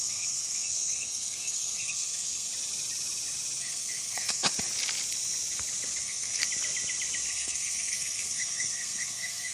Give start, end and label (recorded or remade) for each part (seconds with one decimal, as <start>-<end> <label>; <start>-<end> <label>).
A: 0.0-2.5 remade; 2.5-3.6 recorded; 3.6-4.5 remade; 4.5-6.0 recorded; 6.0-6.4 remade; 6.4-7.3 recorded; 7.3-9.5 remade

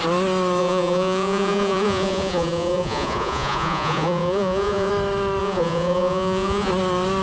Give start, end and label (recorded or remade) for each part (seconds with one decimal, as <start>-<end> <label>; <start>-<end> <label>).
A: 0.0-0.6 recorded; 0.6-4.9 remade; 4.9-5.4 recorded; 5.4-6.7 remade; 6.7-7.2 recorded